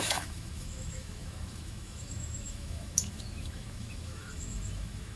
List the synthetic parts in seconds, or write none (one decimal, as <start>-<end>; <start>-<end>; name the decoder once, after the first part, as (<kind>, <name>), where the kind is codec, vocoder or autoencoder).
0.0-5.2 (autoencoder, DAC-VAE)